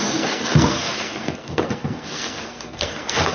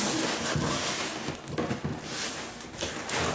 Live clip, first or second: second